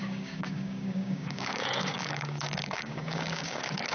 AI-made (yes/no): yes